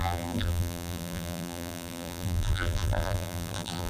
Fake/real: fake